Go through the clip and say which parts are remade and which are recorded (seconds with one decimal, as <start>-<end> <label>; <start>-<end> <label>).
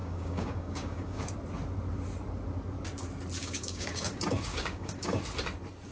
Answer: 0.0-1.3 remade; 1.3-3.4 recorded; 3.4-5.2 remade; 5.2-5.9 recorded